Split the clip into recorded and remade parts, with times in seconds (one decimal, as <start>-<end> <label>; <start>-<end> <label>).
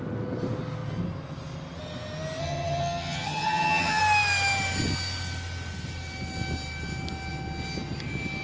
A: 0.0-2.4 recorded; 2.4-4.0 remade; 4.0-8.4 recorded